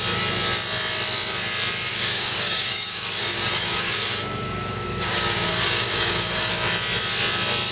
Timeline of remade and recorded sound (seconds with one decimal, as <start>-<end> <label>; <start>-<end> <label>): 0.0-1.9 recorded; 1.9-6.5 remade; 6.5-7.7 recorded